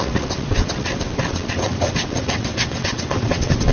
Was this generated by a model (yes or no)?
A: yes